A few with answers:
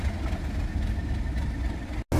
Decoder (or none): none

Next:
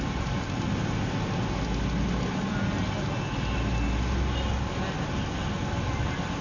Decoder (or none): none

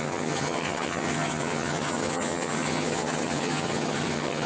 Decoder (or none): vocoder, HiFi-GAN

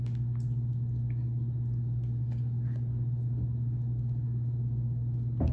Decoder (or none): none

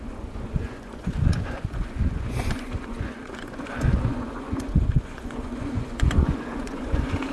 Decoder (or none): vocoder, Vocos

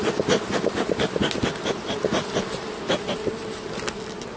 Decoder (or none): none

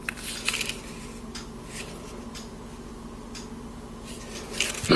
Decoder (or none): none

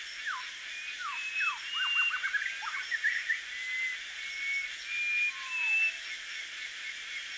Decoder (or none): none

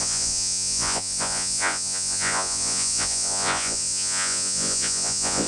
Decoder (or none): vocoder, Vocos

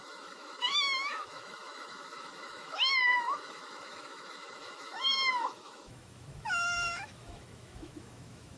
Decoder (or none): autoencoder, DAC-VAE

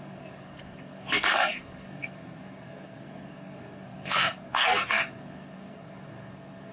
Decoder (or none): codec, SNAC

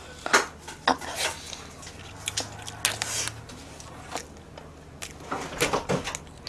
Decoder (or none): none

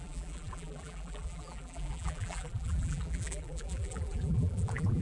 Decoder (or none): vocoder, BigVGAN v2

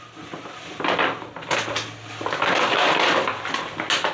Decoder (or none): none